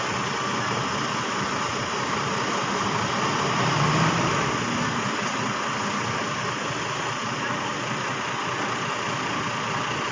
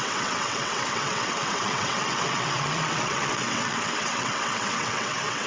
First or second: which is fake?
second